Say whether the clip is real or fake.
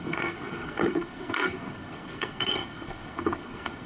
fake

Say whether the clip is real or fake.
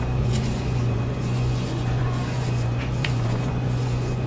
fake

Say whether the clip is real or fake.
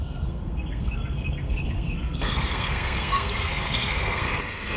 fake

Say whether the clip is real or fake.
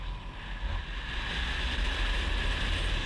real